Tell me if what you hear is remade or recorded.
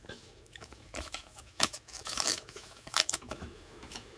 remade